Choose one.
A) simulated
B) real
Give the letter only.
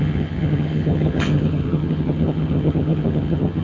A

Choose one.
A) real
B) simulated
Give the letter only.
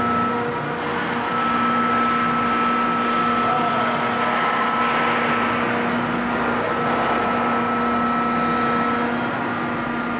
A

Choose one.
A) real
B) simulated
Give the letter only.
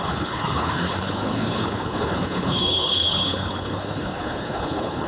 B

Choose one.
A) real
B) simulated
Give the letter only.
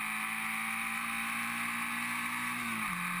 A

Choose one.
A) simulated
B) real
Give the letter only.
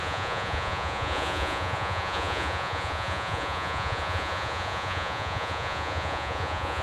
A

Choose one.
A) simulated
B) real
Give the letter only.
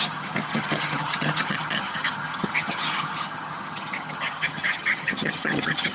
A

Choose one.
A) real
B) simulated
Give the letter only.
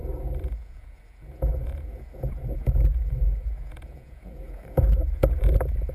B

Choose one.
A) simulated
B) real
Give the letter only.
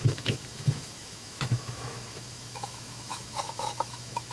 A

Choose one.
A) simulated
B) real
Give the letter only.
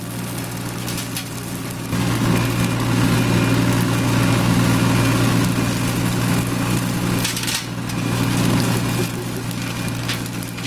B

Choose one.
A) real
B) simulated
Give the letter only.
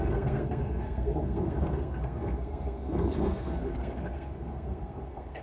B